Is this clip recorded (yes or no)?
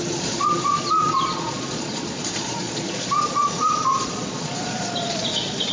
no